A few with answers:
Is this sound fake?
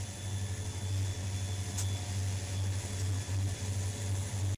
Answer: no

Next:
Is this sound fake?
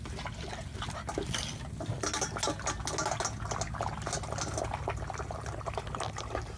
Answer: no